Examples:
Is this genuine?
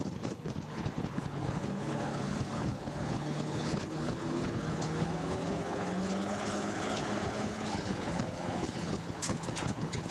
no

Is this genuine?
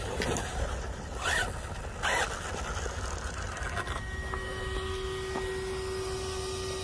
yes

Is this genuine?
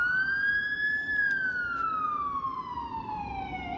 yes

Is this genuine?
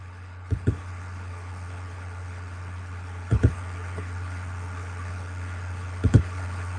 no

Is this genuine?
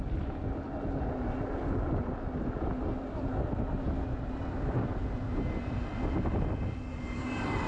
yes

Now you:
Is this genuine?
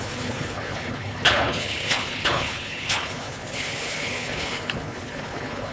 no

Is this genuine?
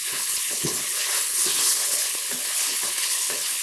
no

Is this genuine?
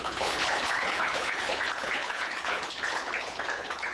no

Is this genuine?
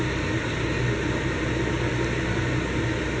yes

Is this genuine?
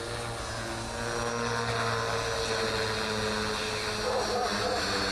yes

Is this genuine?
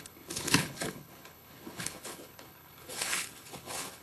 no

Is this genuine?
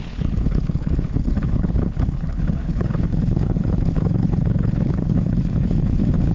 no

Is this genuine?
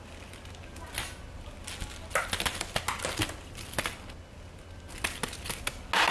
yes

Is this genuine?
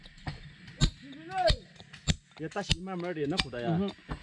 yes